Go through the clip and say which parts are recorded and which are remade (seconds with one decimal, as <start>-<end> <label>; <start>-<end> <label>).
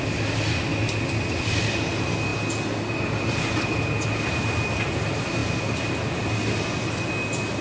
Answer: 0.0-7.6 recorded